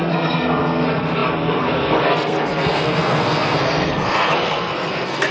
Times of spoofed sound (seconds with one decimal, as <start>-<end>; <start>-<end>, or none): 0.0-5.3